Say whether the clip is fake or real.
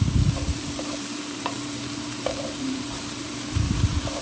fake